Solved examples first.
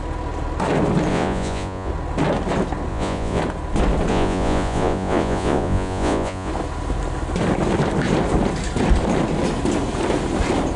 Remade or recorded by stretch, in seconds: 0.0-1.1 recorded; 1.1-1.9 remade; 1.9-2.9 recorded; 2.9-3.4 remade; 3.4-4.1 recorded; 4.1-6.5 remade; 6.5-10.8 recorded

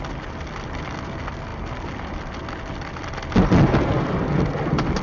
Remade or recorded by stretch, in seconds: 0.0-5.0 recorded

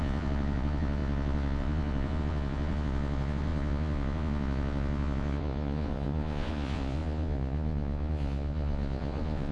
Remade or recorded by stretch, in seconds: 0.0-9.5 remade

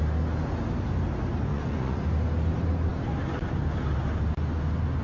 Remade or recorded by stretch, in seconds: 0.0-1.5 recorded; 1.5-2.0 remade; 2.0-5.0 recorded

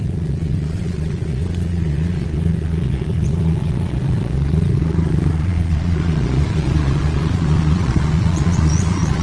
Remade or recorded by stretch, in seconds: 0.0-9.2 remade

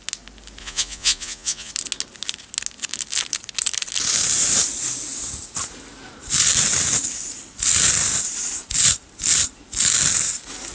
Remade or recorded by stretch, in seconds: 0.0-0.6 recorded; 0.6-1.7 remade; 1.7-10.7 recorded